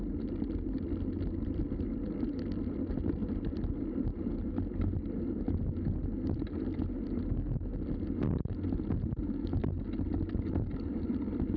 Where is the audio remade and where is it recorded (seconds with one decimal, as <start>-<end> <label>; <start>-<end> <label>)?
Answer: 0.0-11.6 recorded